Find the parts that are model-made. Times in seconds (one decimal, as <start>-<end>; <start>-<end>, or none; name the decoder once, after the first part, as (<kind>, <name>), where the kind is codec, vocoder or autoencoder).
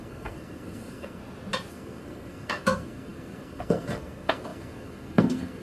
0.0-1.2 (codec, SNAC); 1.7-5.6